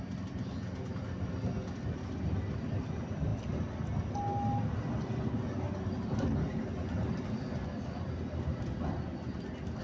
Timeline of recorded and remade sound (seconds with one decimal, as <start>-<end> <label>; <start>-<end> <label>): 0.0-9.8 recorded